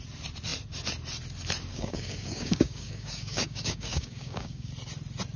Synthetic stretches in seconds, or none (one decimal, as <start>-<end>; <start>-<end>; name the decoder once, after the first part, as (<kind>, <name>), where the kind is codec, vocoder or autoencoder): 1.7-4.7 (codec, DAC)